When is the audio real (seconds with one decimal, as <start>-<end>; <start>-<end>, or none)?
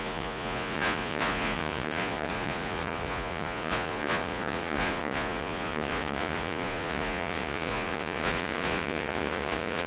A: none